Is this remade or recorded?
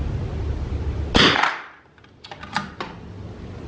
recorded